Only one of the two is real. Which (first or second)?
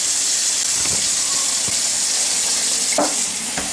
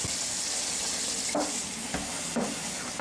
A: second